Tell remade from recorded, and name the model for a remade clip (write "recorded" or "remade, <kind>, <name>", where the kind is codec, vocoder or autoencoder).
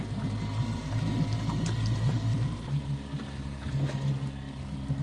recorded